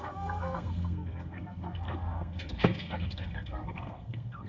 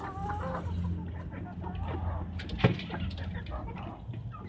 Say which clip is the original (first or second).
second